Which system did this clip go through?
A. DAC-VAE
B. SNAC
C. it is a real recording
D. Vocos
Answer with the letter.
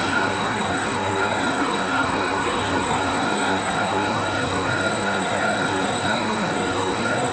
B